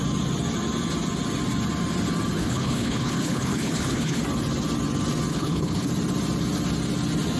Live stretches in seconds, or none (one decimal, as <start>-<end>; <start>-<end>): 0.0-2.4; 4.2-5.3; 5.9-7.4